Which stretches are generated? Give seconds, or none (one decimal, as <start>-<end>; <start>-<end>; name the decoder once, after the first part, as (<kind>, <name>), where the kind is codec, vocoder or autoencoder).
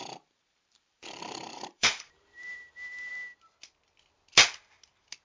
0.0-3.1 (vocoder, BigVGAN v2)